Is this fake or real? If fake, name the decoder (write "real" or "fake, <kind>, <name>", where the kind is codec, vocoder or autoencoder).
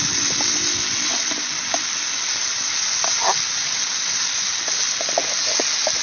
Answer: real